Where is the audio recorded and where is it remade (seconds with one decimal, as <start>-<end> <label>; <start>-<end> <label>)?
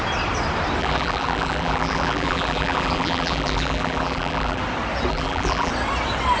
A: 0.0-0.8 recorded; 0.8-4.6 remade; 4.6-5.1 recorded; 5.1-5.7 remade; 5.7-6.4 recorded